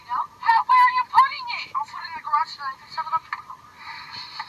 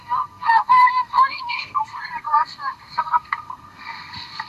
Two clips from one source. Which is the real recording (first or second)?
first